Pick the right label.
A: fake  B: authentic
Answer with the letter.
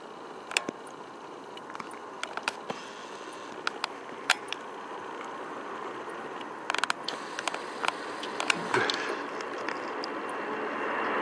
B